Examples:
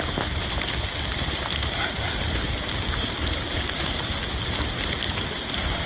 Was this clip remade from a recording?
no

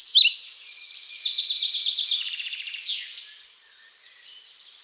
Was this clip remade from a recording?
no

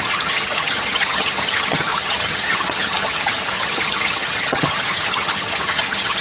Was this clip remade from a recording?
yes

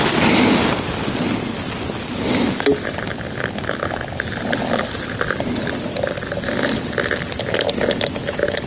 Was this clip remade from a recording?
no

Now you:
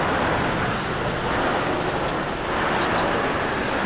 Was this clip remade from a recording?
no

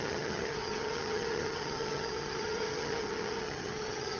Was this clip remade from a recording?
yes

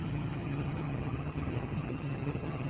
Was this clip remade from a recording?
yes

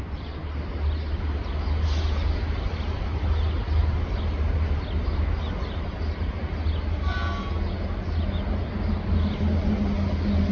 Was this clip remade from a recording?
no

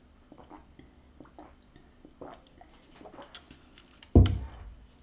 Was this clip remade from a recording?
no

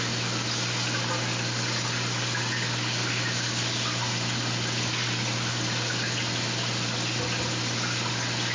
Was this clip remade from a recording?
no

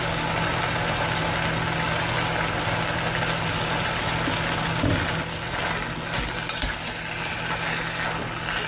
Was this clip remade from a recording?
no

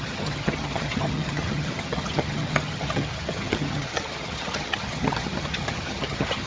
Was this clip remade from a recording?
yes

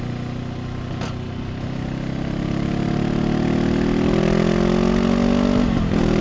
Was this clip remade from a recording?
no